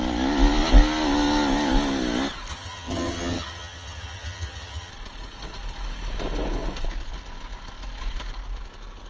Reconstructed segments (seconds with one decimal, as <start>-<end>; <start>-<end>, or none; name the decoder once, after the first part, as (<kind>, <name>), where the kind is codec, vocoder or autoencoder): 2.5-4.9 (vocoder, HiFi-GAN)